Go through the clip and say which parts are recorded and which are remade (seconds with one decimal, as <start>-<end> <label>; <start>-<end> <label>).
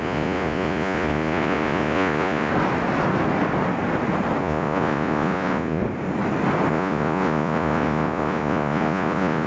0.0-2.5 remade; 2.5-4.4 recorded; 4.4-5.8 remade; 5.8-6.7 recorded; 6.7-9.5 remade